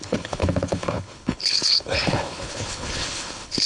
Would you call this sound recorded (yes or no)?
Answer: no